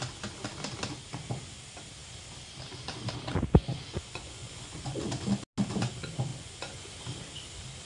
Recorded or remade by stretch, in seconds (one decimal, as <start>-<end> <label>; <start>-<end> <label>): 0.0-3.9 recorded; 3.9-5.0 remade; 5.0-6.3 recorded; 6.3-7.0 remade; 7.0-7.9 recorded

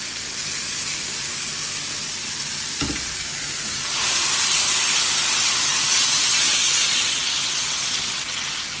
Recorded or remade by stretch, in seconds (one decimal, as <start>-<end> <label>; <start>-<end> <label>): 0.0-5.4 recorded; 5.4-8.4 remade; 8.4-8.8 recorded